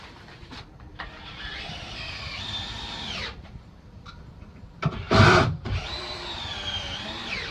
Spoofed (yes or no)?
yes